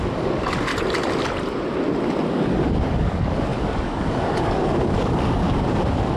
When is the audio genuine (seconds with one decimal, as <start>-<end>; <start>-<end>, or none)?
0.7-2.3